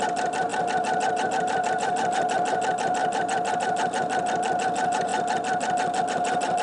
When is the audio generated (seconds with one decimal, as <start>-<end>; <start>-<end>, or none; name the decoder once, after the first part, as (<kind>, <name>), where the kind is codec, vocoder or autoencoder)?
0.0-3.0 (vocoder, BigVGAN v2); 3.6-5.1; 6.0-6.6